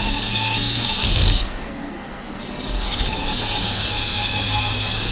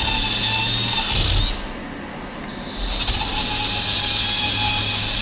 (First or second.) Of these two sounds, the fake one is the first